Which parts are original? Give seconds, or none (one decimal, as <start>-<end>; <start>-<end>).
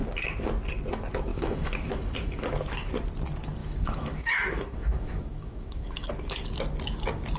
0.0-1.3; 2.9-3.6; 6.1-7.4